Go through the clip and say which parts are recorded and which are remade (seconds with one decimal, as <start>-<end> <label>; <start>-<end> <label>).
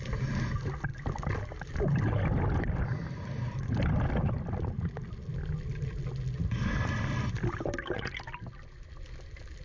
0.0-0.9 recorded; 0.9-4.3 remade; 4.3-9.6 recorded